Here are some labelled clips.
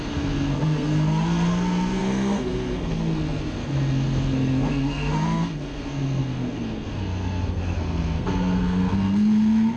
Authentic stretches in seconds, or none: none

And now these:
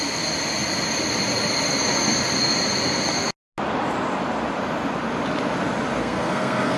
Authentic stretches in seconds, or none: 0.0-6.0

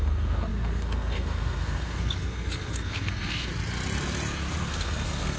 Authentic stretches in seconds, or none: 3.5-4.6

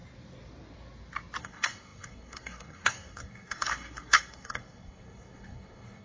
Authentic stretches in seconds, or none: 0.0-1.4

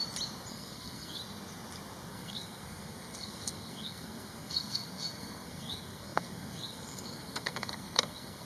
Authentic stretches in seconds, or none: 0.0-0.5; 1.2-2.1